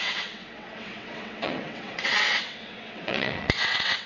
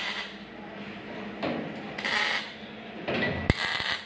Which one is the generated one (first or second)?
first